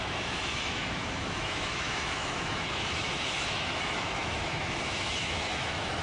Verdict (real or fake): fake